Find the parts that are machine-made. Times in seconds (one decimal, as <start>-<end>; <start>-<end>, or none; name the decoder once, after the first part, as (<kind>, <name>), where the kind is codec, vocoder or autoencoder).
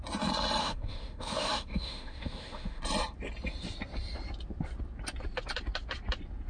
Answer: 0.6-2.8 (autoencoder, DAC-VAE)